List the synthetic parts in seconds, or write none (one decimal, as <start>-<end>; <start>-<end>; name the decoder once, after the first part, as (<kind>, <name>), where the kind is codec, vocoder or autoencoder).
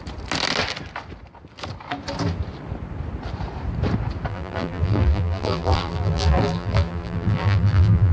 4.3-8.1 (vocoder, BigVGAN v2)